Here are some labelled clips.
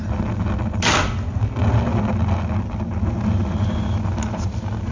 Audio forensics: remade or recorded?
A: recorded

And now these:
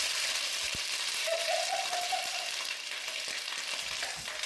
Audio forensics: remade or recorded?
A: recorded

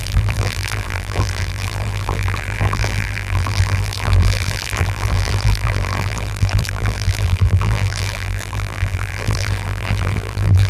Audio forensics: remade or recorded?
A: remade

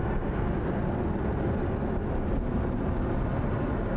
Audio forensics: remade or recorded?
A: recorded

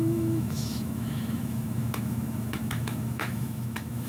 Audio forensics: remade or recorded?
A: remade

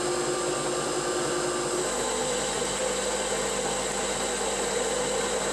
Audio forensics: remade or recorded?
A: recorded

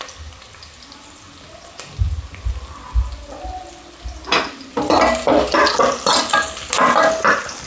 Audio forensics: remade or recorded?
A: recorded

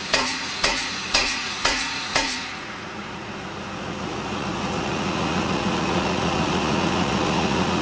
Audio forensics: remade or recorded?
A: remade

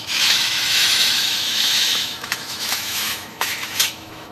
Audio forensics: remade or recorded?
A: remade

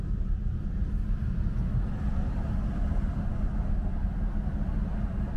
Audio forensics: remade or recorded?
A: recorded